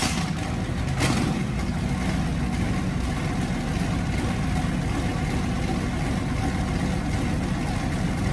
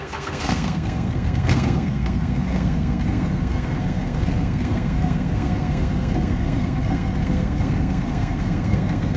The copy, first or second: second